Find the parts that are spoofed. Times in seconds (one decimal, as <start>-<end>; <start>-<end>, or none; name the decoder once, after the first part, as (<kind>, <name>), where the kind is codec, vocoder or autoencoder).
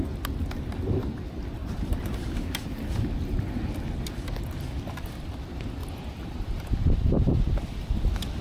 1.6-3.7 (vocoder, BigVGAN v2); 5.8-7.9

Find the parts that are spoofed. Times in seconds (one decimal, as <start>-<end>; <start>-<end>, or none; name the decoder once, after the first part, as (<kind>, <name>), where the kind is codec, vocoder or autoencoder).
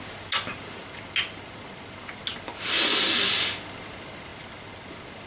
none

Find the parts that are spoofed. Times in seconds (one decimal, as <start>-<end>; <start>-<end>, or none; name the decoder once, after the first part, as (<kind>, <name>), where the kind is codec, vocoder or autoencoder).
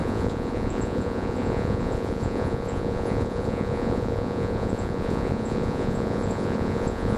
0.0-7.2 (vocoder, Vocos)